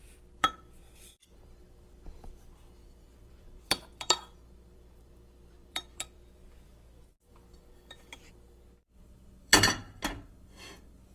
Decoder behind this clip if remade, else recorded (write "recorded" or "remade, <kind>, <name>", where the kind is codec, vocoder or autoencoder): remade, vocoder, BigVGAN v2